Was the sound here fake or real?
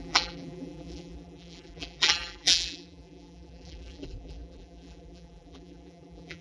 fake